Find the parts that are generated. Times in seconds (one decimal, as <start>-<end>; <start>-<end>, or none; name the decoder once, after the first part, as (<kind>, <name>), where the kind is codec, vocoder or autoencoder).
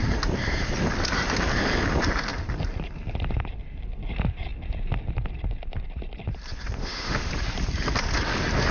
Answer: 6.8-7.3 (autoencoder, DAC-VAE)